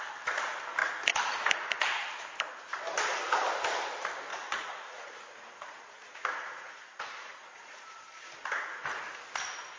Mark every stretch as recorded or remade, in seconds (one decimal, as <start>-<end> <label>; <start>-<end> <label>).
0.0-4.3 recorded; 4.3-8.1 remade; 8.1-9.8 recorded